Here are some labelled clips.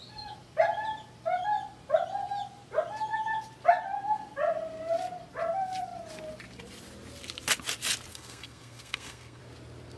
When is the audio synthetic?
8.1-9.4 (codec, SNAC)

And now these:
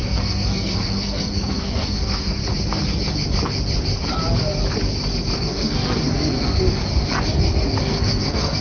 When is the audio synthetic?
0.0-2.4 (codec, SNAC); 5.4-6.8; 7.8-8.6

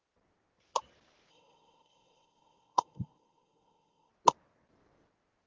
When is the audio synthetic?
1.3-4.1 (codec, SNAC)

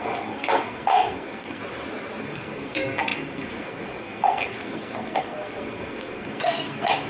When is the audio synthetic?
0.0-1.6 (codec, SNAC); 2.2-7.1